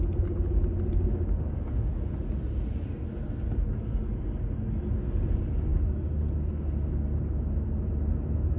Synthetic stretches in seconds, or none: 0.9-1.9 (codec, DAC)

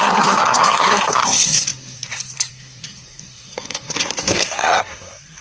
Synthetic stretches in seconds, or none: 0.0-5.4 (codec, SNAC)

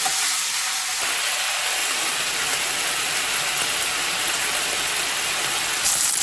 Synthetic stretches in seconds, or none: 1.8-2.3 (vocoder, BigVGAN v2)

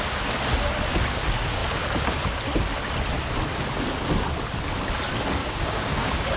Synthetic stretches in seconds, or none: 5.4-6.4 (codec, DAC)

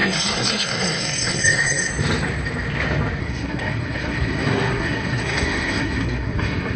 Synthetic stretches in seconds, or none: 0.0-1.9 (codec, SNAC); 3.2-6.8

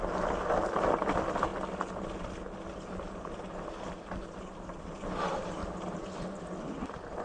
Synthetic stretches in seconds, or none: 5.6-6.6 (vocoder, BigVGAN v2)

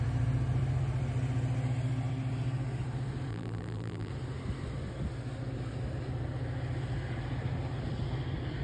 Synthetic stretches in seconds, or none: 3.3-4.1 (vocoder, BigVGAN v2)